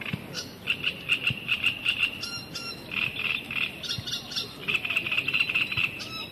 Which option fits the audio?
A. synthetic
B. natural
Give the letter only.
B